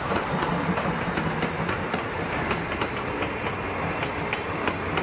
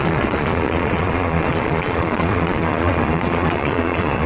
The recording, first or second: first